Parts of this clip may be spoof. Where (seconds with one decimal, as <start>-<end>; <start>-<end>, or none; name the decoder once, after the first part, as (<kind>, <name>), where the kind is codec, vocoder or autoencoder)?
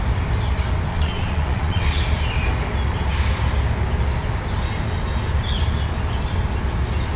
0.9-2.0 (vocoder, WaveNeXt)